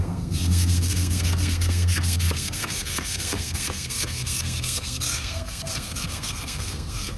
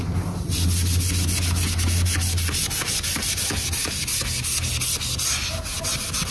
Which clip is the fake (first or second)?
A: first